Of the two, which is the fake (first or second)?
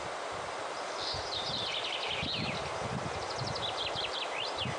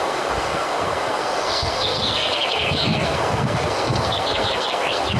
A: second